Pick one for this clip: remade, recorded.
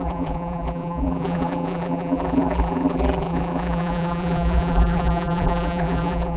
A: remade